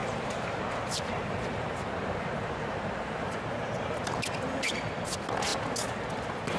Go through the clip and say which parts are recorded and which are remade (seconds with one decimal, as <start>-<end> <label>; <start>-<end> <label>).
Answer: 0.0-4.0 remade; 4.0-6.6 recorded